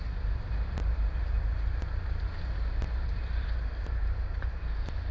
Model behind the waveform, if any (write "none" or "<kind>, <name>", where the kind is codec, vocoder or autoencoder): vocoder, BigVGAN v2